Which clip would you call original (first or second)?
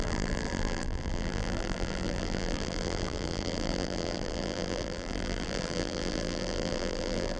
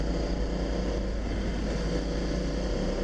second